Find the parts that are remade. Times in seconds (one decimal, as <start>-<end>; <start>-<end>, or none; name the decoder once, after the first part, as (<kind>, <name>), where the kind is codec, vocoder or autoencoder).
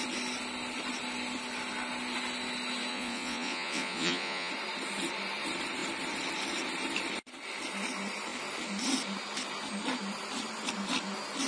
2.9-4.5 (vocoder, Vocos)